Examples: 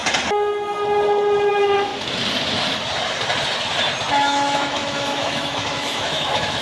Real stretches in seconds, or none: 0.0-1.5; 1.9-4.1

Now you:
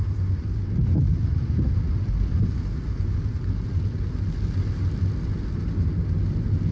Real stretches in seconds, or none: 0.0-6.7

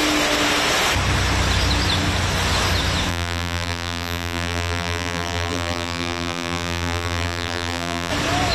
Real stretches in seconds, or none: 0.0-3.1; 8.1-8.5

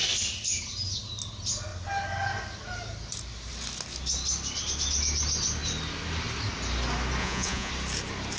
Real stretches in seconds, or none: 0.0-7.2; 7.7-8.4

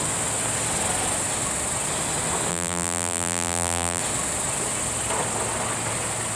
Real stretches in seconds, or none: 0.0-2.5; 4.0-6.4

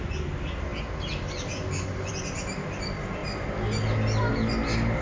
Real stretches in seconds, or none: 0.0-5.0

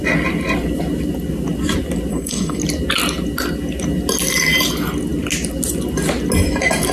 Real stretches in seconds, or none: 0.0-2.1; 2.6-6.9

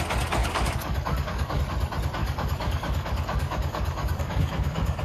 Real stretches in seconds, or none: 0.0-0.4; 1.6-2.2